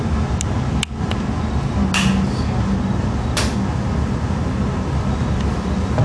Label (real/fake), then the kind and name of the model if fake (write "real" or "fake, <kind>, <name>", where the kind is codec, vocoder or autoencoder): real